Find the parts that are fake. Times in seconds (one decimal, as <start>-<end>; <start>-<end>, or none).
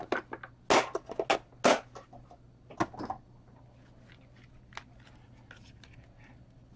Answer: none